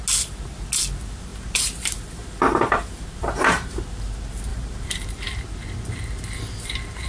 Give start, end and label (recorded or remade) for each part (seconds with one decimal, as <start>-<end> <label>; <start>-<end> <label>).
0.0-1.3 recorded; 1.3-3.8 remade; 3.8-4.5 recorded; 4.5-5.1 remade; 5.1-7.1 recorded